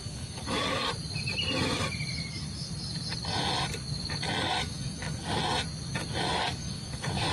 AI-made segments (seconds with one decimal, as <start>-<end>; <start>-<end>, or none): 0.0-0.9; 4.6-5.4; 6.3-7.3